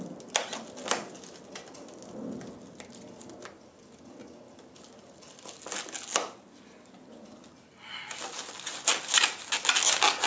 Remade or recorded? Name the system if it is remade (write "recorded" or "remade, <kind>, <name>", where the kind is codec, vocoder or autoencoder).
recorded